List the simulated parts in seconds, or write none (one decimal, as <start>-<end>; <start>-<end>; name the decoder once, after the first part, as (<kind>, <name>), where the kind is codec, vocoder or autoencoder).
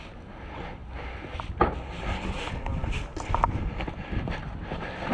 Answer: none